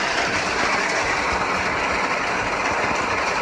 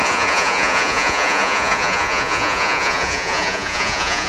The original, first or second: first